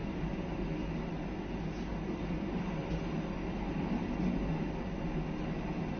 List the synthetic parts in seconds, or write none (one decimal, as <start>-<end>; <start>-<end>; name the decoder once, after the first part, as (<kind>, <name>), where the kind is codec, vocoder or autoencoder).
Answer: 0.0-0.9 (vocoder, BigVGAN v2); 1.9-4.0